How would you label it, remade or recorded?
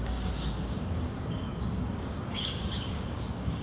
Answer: remade